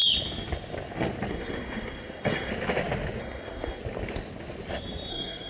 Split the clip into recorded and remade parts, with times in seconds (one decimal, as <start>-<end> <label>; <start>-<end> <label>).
0.0-1.3 recorded; 1.3-2.5 remade; 2.5-3.2 recorded; 3.2-3.8 remade; 3.8-5.1 recorded; 5.1-5.5 remade